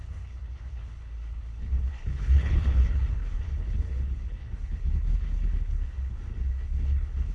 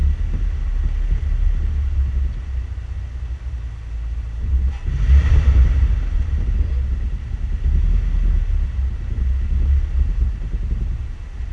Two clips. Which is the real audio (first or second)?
second